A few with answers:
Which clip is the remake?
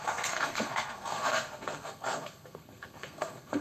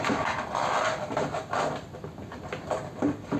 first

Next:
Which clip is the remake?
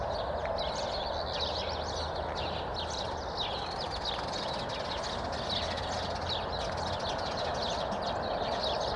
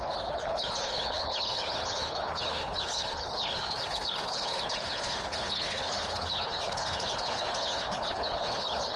second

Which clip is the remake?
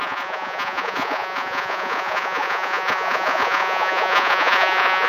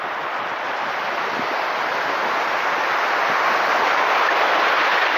first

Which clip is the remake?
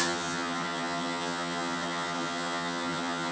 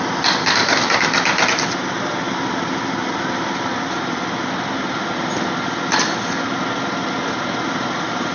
first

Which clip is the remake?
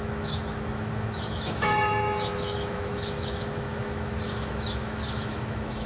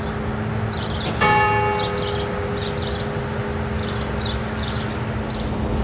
first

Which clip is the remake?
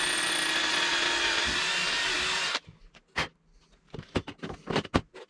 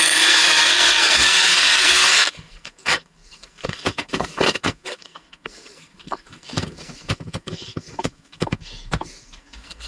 second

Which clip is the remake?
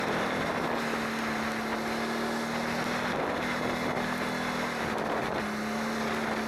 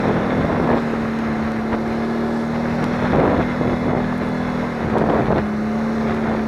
first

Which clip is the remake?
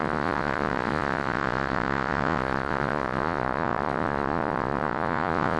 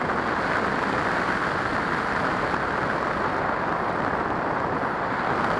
first